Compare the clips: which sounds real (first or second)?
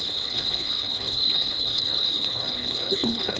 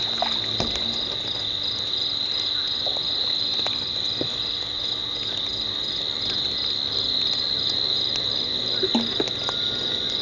second